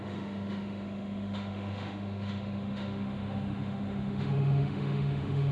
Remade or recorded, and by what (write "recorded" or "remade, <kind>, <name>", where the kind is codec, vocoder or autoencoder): remade, autoencoder, DAC-VAE